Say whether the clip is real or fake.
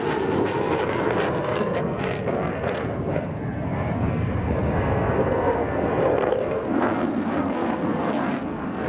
fake